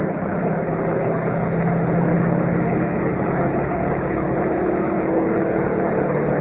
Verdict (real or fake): fake